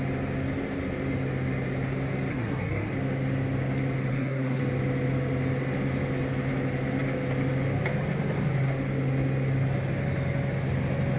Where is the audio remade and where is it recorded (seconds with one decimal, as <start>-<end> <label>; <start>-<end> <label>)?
0.0-2.3 recorded; 2.3-2.9 remade; 2.9-4.1 recorded; 4.1-4.6 remade; 4.6-11.2 recorded